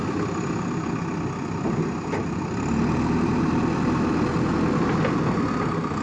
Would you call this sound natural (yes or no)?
yes